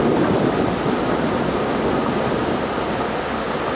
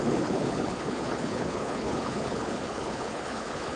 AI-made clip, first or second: second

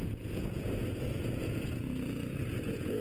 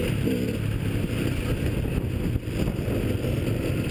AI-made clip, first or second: first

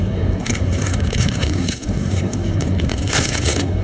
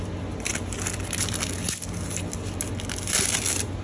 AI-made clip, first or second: first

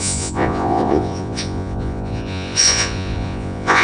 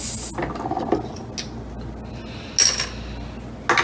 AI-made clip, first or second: first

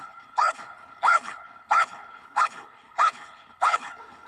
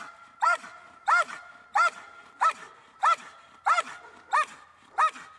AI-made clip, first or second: first